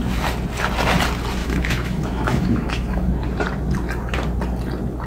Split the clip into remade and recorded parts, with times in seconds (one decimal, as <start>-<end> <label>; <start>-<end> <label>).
0.0-1.4 recorded; 1.4-3.1 remade; 3.1-5.1 recorded